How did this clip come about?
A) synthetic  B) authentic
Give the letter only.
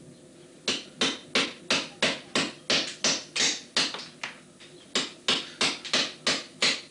B